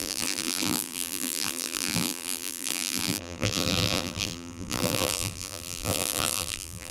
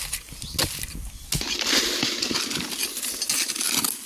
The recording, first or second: second